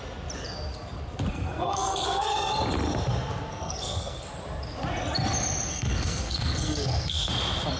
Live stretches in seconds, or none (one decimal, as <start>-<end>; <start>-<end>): 0.0-1.3; 2.5-3.5; 4.4-5.7; 7.3-7.8